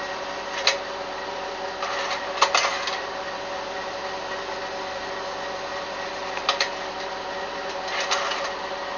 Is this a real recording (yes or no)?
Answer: yes